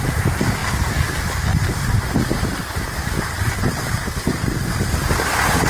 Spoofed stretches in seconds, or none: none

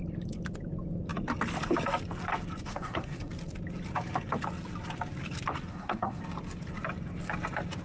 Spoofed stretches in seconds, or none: 2.7-3.3 (codec, SNAC); 5.7-6.2

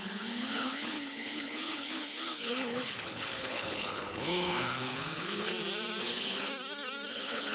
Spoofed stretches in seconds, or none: 0.0-5.5 (codec, HILCodec); 6.0-6.5; 7.1-7.5

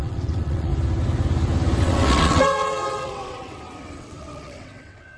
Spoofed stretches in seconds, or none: 0.0-0.7 (vocoder, WaveNeXt); 1.8-5.2

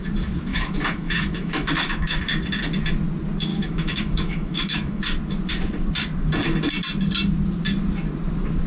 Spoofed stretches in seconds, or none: 0.5-2.2 (autoencoder, DAC-VAE); 3.5-5.0

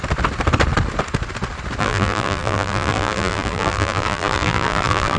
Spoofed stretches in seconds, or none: 1.8-5.2 (vocoder, BigVGAN v2)

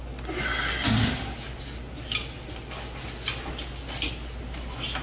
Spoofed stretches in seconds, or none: none

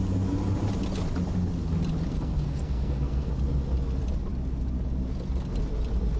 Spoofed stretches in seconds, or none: 2.1-3.3 (codec, SNAC)